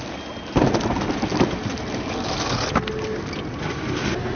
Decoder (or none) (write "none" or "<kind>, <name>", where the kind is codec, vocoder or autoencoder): none